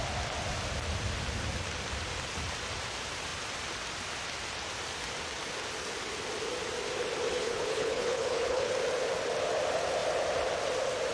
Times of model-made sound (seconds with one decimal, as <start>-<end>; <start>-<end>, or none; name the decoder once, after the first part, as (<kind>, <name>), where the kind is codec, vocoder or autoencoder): 7.3-8.7 (codec, HILCodec)